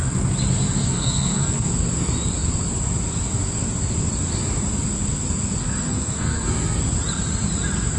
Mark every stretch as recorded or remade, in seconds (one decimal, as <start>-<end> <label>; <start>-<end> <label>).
0.0-0.8 recorded; 0.8-1.7 remade; 1.7-5.6 recorded; 5.6-6.8 remade; 6.8-8.0 recorded